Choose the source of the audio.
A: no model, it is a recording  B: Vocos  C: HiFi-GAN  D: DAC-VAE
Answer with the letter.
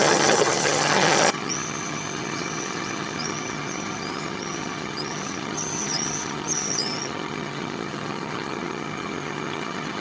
C